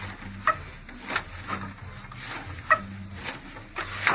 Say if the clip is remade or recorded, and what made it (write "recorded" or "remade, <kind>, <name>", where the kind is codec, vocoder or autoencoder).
recorded